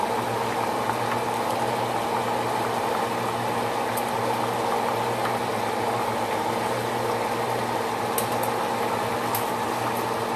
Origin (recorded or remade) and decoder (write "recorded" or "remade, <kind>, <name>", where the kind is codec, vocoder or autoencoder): recorded